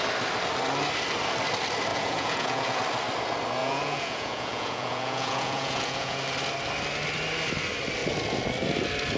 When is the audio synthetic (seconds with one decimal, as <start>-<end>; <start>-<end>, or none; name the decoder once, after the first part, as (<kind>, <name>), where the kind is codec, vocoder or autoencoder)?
1.9-2.8 (vocoder, Vocos); 3.6-6.2